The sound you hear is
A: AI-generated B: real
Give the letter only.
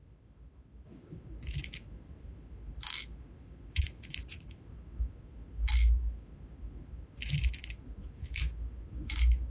A